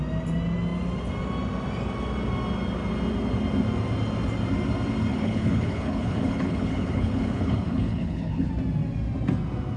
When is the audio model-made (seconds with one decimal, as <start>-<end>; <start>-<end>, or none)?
5.1-8.5